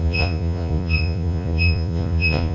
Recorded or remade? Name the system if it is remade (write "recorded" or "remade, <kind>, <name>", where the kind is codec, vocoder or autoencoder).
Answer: remade, vocoder, Vocos